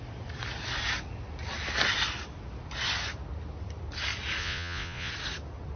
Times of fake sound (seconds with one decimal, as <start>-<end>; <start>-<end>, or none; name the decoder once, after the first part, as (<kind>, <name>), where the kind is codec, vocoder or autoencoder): 4.4-5.1 (vocoder, Vocos)